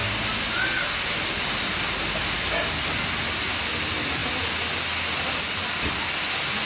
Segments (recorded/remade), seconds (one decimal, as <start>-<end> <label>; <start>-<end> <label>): 0.0-6.7 recorded